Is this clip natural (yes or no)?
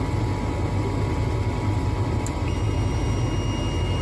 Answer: yes